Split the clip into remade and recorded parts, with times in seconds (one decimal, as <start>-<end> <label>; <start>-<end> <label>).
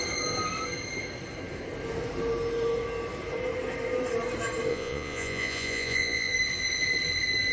0.0-4.7 recorded; 4.7-6.3 remade; 6.3-7.5 recorded